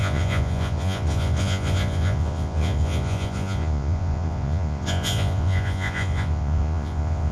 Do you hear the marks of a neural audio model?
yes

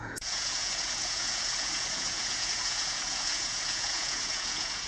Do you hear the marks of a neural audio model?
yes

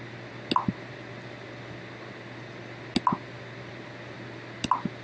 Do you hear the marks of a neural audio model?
no